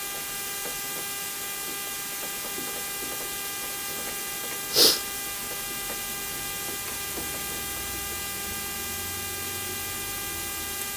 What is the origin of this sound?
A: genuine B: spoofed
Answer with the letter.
A